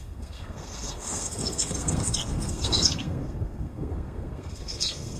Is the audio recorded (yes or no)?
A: no